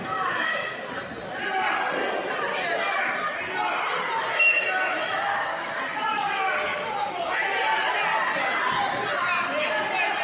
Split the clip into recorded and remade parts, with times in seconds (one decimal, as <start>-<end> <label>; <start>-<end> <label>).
0.0-0.8 remade; 0.8-5.3 recorded; 5.3-5.8 remade; 5.8-10.2 recorded